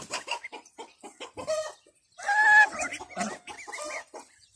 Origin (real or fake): real